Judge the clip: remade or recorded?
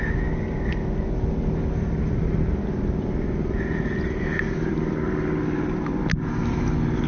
recorded